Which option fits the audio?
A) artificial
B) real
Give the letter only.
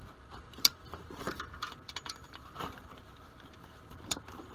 A